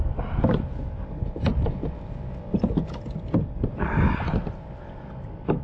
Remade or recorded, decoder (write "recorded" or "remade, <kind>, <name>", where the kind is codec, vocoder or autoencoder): recorded